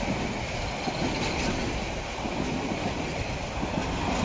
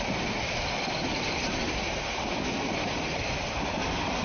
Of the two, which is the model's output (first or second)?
second